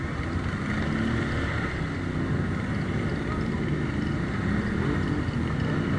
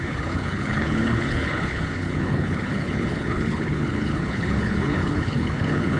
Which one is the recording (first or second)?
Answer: first